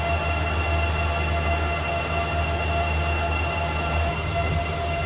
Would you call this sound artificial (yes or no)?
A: no